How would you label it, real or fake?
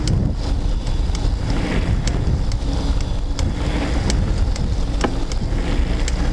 real